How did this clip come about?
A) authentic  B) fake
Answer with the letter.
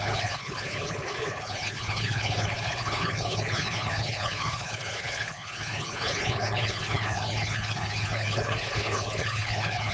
B